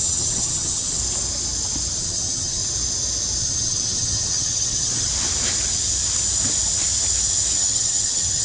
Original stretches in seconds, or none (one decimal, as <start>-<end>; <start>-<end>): 1.0-2.0; 2.6-3.4; 5.1-7.6